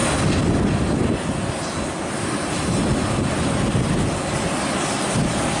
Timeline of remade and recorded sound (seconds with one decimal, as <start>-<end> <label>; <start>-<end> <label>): 0.0-5.6 recorded